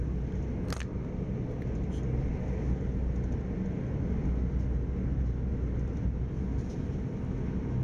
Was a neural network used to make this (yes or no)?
no